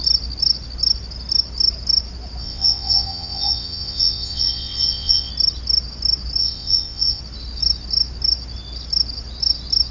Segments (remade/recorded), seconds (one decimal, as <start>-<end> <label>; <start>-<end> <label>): 0.0-2.4 recorded; 2.4-5.3 remade; 5.3-6.4 recorded; 6.4-7.2 remade; 7.2-9.9 recorded